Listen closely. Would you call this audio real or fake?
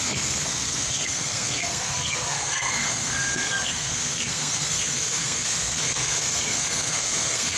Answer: fake